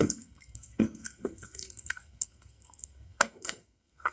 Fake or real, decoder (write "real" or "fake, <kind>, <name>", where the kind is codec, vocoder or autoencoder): fake, codec, SNAC